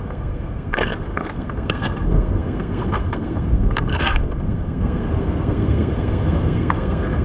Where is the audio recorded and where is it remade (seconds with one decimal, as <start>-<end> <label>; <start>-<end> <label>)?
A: 0.0-7.2 remade